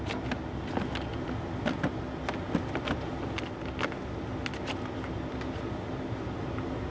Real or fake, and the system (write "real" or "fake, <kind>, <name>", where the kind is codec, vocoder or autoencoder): real